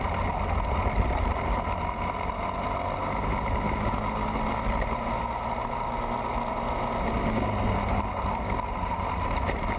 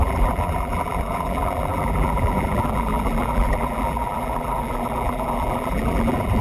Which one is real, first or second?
first